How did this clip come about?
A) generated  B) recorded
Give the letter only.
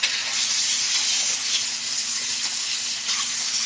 A